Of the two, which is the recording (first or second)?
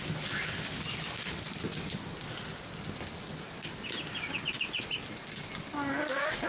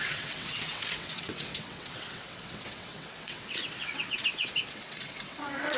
first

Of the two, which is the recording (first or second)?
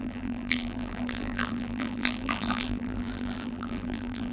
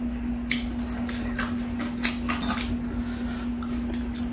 second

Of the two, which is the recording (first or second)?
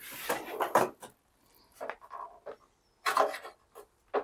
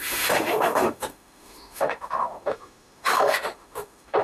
first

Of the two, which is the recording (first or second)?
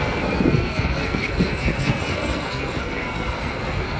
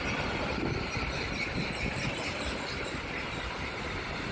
second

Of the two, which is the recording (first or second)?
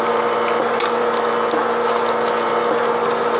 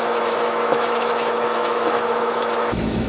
first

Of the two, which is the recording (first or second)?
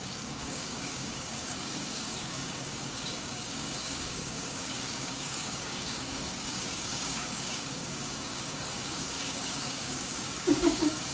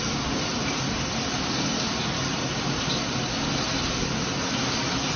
second